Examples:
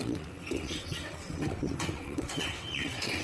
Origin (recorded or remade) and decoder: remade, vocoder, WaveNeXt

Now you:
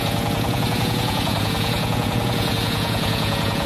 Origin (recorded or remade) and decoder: remade, vocoder, Vocos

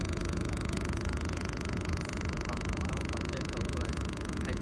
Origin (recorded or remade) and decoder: remade, vocoder, Vocos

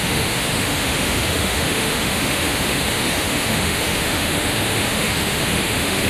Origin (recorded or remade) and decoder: remade, autoencoder, DAC-VAE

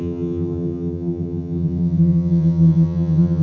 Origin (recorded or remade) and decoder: remade, vocoder, HiFi-GAN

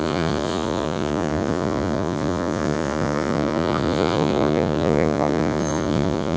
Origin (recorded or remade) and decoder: remade, vocoder, Vocos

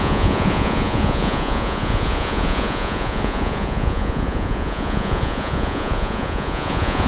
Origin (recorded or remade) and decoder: remade, vocoder, Vocos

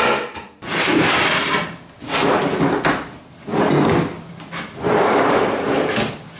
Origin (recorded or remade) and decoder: recorded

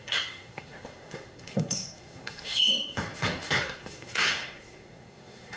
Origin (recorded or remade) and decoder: remade, codec, SNAC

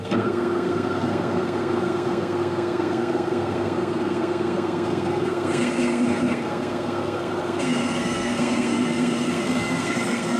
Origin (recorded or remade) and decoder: remade, codec, SNAC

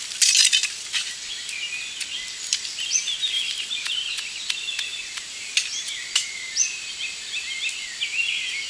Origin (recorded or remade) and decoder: recorded